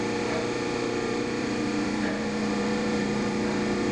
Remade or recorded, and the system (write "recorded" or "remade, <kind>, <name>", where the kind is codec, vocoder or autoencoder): remade, vocoder, BigVGAN v2